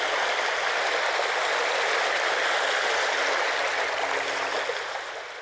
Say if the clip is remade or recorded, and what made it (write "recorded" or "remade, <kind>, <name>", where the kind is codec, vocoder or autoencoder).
recorded